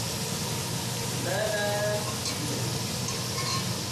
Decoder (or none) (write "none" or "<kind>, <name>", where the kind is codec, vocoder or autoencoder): none